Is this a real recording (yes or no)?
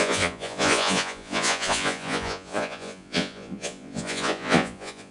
no